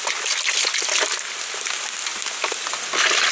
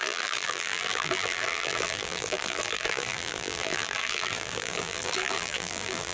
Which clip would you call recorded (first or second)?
first